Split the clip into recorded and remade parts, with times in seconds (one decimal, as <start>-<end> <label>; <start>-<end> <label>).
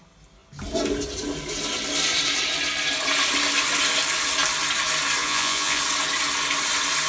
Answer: 0.0-5.2 recorded; 5.2-5.8 remade; 5.8-7.1 recorded